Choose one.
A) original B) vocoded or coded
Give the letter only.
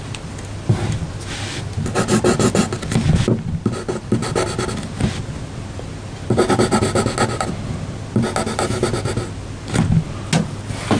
A